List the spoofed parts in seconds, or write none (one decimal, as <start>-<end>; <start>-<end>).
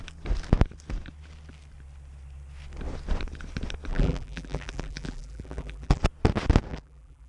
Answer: 3.9-6.0; 6.7-7.3